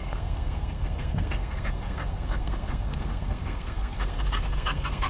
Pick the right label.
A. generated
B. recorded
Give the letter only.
A